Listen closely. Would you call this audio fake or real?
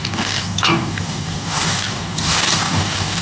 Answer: fake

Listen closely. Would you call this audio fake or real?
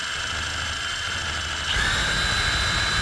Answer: real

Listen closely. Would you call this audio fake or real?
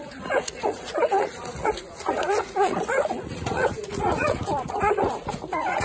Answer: fake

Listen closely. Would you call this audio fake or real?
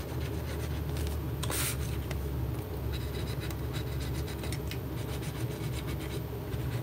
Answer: real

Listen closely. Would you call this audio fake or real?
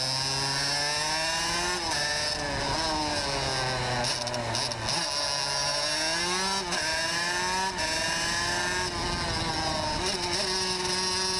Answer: real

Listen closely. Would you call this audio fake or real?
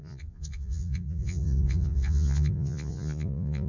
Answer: fake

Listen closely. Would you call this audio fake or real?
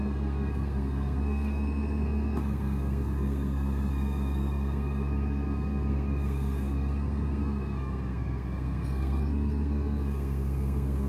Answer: fake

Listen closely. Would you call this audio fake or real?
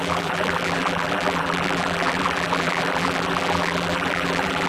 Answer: fake